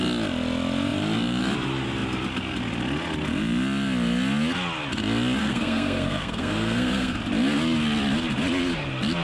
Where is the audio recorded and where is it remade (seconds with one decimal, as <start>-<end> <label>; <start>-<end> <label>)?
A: 0.0-5.4 recorded; 5.4-7.2 remade; 7.2-9.2 recorded